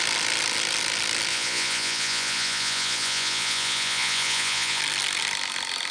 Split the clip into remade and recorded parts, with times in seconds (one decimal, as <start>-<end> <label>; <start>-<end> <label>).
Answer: 0.0-1.3 recorded; 1.3-4.8 remade; 4.8-5.9 recorded